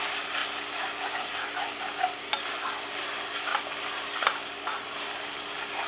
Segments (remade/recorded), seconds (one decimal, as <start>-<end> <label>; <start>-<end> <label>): 0.0-5.9 recorded